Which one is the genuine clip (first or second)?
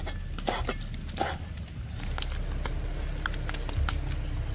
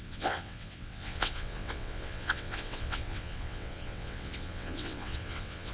first